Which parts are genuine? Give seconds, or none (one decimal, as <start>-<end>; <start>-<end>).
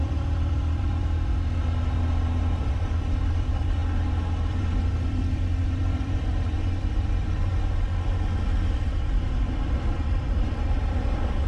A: 1.0-2.6; 3.8-4.5; 7.5-9.4